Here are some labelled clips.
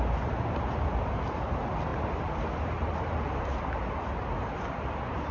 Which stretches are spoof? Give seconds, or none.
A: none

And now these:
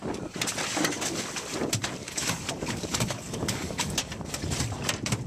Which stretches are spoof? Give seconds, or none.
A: 2.0-4.1